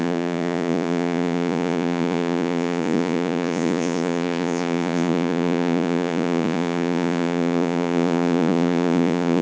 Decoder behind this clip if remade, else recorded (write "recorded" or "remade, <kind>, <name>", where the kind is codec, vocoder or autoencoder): remade, vocoder, Vocos